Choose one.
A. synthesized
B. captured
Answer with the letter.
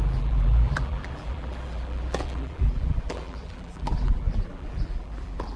A